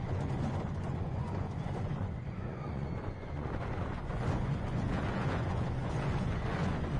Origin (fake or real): fake